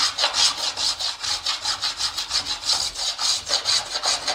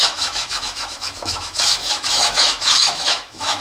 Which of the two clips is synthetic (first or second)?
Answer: second